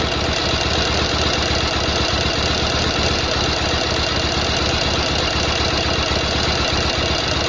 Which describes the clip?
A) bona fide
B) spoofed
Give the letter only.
A